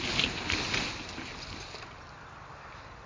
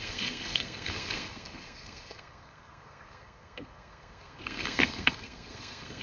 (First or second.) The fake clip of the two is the second